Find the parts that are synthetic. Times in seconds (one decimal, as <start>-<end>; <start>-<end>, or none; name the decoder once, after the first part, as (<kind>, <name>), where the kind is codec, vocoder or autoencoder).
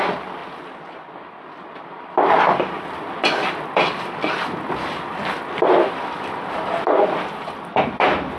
none